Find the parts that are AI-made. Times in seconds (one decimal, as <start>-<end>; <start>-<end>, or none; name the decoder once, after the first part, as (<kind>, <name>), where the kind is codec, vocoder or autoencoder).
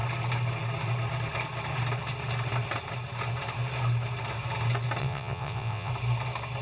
5.0-5.9 (vocoder, WaveNeXt)